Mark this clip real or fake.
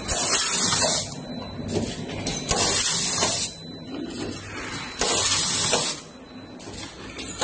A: real